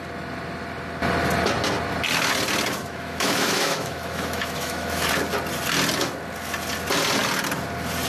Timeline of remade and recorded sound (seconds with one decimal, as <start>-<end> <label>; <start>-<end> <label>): 0.0-2.8 recorded; 2.8-5.1 remade; 5.1-8.1 recorded